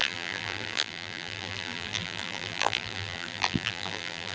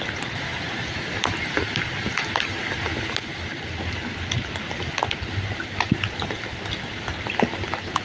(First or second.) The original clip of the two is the second